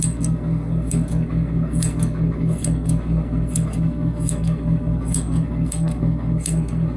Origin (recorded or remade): remade